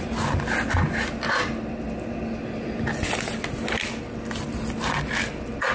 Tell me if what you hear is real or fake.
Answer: real